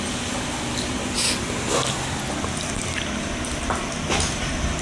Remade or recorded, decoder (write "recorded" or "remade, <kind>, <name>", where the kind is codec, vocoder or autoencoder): recorded